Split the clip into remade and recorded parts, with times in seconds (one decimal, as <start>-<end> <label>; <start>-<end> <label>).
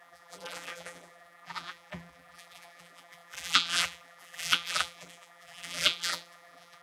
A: 0.0-6.8 remade